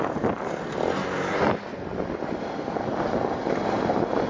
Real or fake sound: real